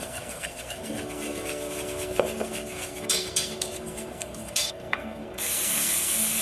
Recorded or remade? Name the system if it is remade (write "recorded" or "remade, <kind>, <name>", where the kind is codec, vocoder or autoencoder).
remade, codec, SNAC